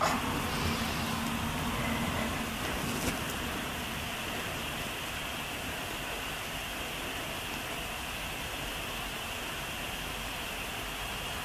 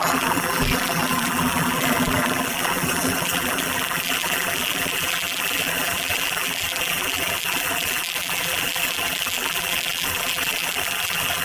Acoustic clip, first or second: first